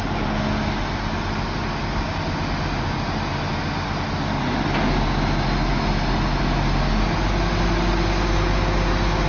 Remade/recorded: recorded